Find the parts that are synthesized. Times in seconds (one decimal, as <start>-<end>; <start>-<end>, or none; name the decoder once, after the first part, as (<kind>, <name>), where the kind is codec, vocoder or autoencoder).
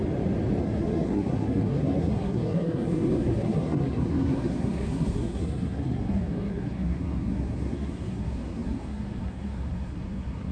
0.6-10.5 (codec, SNAC)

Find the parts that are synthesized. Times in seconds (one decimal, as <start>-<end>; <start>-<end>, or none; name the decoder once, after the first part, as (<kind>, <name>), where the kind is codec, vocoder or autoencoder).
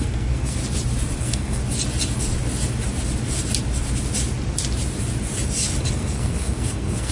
0.0-0.6 (codec, SNAC); 1.2-1.6; 5.9-7.1